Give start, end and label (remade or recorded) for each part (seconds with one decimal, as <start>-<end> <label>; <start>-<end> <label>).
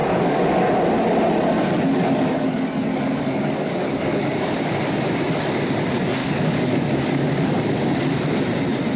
0.0-0.6 remade; 0.6-2.0 recorded; 2.0-4.5 remade; 4.5-6.2 recorded; 6.2-8.3 remade; 8.3-9.0 recorded